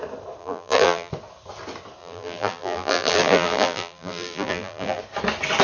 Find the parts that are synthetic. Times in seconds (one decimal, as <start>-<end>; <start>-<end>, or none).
0.4-1.1; 2.0-5.0